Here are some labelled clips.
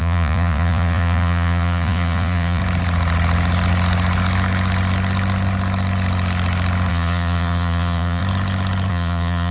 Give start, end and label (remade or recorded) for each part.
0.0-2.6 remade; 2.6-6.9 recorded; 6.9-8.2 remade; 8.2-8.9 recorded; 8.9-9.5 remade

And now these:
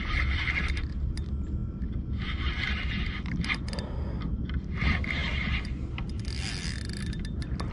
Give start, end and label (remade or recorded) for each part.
0.0-7.7 recorded